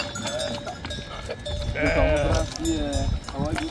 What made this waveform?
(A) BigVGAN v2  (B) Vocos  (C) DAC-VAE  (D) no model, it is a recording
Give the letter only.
D